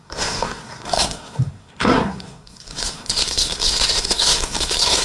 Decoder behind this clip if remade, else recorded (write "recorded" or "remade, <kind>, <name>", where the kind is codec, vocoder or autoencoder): remade, codec, SNAC